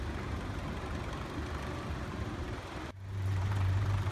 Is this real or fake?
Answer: fake